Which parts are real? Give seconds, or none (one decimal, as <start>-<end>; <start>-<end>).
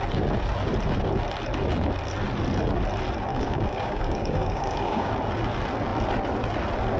0.0-3.3; 5.1-7.0